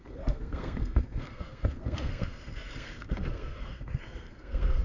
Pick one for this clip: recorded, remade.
remade